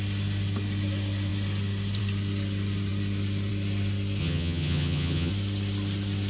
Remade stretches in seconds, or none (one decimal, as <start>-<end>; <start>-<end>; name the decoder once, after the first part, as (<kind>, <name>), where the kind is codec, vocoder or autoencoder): 4.2-5.3 (vocoder, HiFi-GAN)